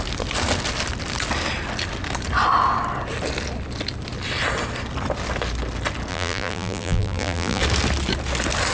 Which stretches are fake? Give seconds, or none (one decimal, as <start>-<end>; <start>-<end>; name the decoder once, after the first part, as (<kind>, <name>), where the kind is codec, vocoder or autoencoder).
6.1-7.6 (vocoder, BigVGAN v2)